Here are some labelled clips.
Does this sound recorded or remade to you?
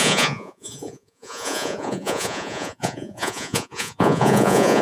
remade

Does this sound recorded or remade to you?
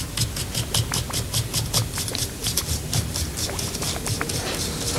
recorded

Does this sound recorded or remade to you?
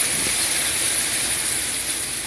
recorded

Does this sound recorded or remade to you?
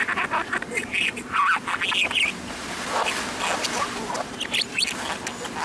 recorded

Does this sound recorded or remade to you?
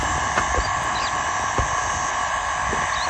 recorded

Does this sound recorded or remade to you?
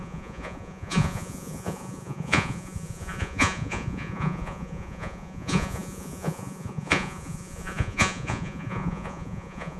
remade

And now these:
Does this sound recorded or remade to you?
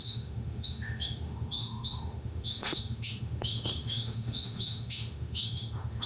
remade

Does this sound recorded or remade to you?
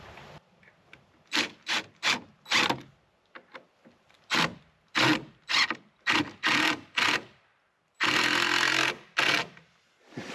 recorded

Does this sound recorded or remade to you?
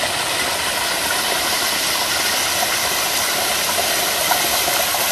recorded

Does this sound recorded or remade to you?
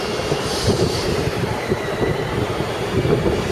remade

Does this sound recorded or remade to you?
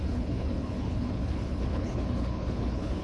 remade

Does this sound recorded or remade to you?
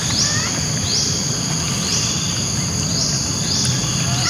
recorded